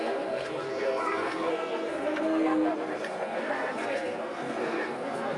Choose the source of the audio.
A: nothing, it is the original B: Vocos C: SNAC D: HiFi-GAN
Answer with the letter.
C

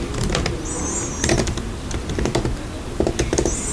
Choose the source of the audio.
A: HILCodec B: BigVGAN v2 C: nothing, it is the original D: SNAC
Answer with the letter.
C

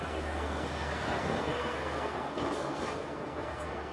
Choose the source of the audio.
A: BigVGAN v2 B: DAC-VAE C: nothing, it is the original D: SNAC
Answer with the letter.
D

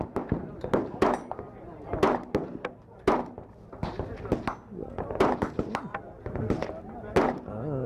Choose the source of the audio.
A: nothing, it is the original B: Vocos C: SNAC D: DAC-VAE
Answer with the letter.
A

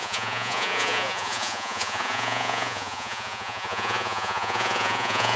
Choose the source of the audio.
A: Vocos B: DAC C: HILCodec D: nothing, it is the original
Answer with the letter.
A